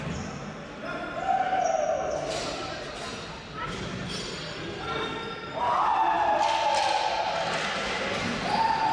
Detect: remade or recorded recorded